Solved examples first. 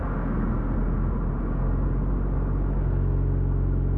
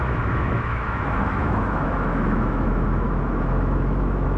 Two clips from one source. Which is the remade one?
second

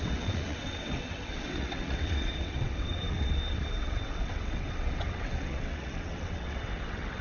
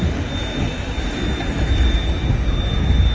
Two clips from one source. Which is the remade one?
first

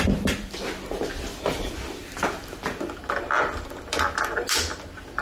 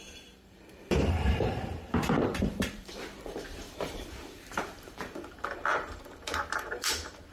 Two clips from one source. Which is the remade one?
second